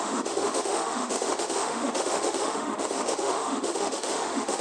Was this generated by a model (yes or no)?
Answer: yes